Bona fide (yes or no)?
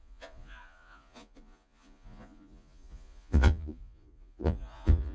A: no